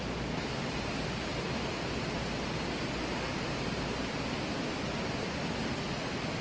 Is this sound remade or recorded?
recorded